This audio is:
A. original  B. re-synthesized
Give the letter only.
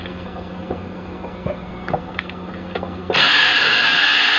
B